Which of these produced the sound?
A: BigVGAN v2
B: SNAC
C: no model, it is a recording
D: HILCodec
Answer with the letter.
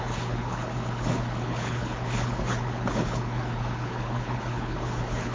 D